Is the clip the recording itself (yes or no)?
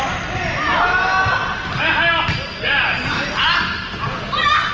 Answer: yes